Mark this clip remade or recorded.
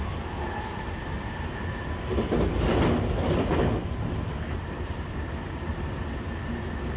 recorded